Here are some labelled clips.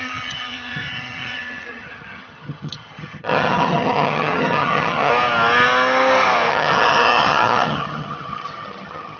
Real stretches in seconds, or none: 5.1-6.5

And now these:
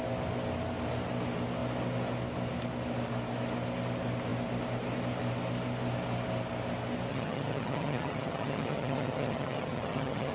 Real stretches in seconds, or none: 0.0-7.1

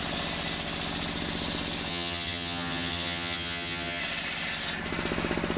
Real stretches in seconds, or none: 0.0-1.9; 4.0-5.6

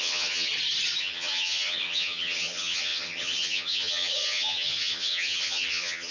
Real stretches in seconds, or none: 0.5-1.0

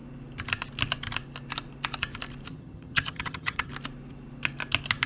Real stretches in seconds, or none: 0.0-2.5; 3.7-5.1

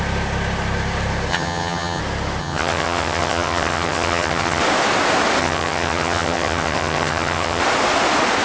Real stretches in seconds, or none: 0.0-1.3; 2.0-2.4; 4.6-5.4; 7.6-8.4